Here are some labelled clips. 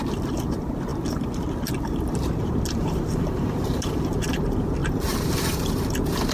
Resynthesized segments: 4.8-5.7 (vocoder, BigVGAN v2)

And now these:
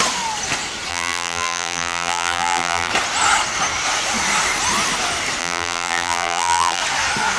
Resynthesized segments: 0.9-2.9 (vocoder, BigVGAN v2); 5.4-6.8

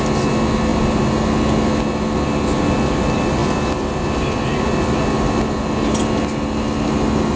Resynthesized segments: none

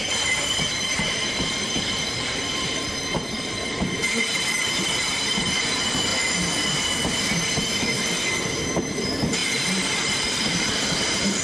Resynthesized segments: 0.0-6.1 (vocoder, BigVGAN v2); 8.7-11.4